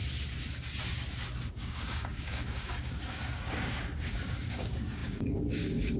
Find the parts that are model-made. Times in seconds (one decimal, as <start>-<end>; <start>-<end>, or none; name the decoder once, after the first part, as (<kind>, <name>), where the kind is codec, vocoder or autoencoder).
1.5-6.0 (codec, DAC)